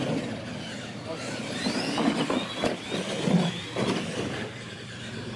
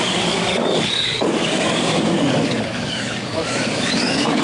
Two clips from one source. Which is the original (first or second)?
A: first